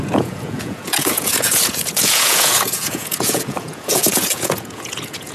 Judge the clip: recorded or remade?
remade